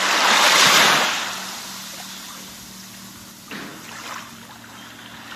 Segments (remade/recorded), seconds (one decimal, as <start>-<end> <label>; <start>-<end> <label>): 0.0-5.4 recorded